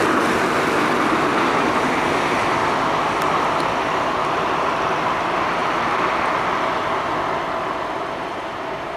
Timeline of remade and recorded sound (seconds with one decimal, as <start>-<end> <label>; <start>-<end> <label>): 0.0-5.6 remade; 5.6-8.0 recorded; 8.0-9.0 remade